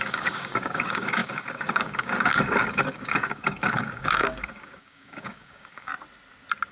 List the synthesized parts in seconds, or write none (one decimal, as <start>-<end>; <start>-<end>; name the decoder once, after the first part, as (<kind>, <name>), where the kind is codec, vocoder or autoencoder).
0.0-5.9 (codec, DAC)